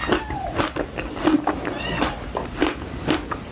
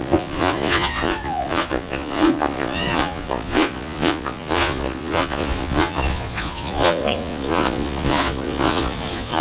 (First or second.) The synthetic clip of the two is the second